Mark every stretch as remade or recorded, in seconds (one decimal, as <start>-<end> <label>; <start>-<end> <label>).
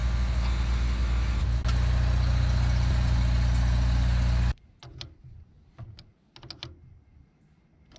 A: 0.0-8.0 recorded